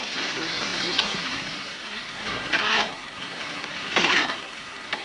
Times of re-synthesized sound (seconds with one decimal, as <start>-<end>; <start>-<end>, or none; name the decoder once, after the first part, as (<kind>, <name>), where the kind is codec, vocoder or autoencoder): 0.0-5.0 (codec, SNAC)